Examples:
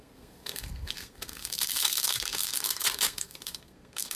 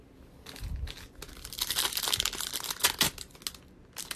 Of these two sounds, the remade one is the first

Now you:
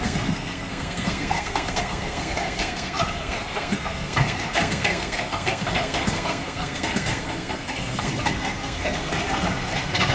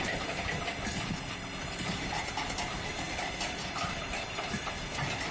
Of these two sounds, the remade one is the first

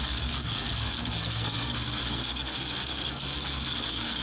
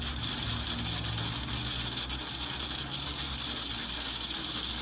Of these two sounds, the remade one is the first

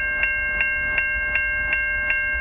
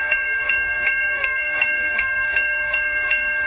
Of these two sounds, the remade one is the second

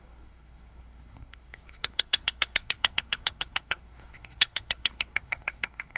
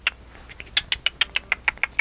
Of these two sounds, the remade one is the first